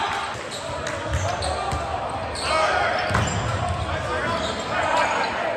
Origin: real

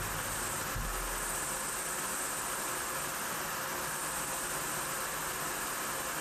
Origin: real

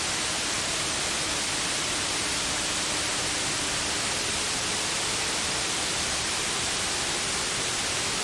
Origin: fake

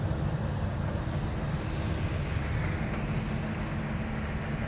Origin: real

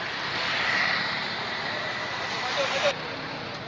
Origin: real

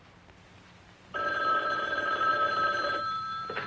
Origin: fake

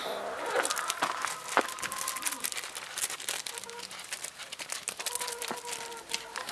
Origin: real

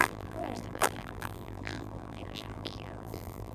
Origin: fake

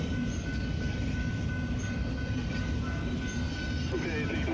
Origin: real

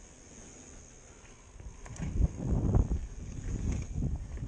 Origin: real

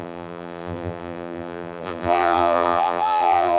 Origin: fake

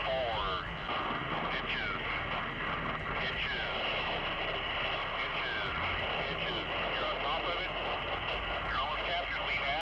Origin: real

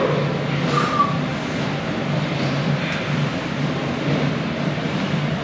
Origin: real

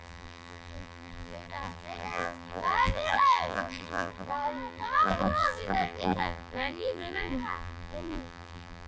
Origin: fake